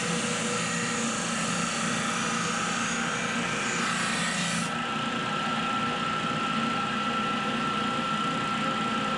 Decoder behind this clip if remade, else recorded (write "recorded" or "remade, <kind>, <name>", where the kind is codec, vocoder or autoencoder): recorded